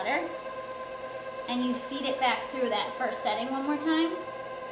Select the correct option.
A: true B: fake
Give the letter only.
A